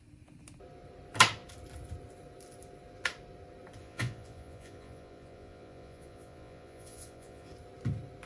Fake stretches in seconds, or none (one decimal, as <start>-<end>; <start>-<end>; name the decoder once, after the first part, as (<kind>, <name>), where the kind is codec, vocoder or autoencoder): 3.8-7.5 (vocoder, Vocos)